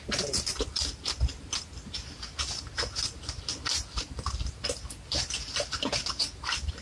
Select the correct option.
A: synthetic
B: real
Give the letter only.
B